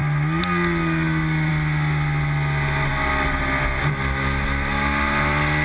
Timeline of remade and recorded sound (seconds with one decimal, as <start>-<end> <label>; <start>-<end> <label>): 0.0-5.6 recorded

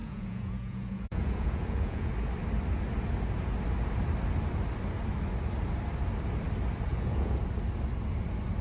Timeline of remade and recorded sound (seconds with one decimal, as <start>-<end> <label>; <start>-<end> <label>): 0.0-2.1 remade; 2.1-6.9 recorded; 6.9-7.4 remade; 7.4-8.6 recorded